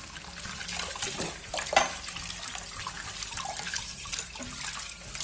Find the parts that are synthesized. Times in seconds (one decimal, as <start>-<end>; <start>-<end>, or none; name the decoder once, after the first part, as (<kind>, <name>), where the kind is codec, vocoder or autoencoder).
none